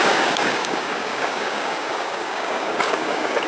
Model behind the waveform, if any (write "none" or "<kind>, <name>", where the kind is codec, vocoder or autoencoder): codec, DAC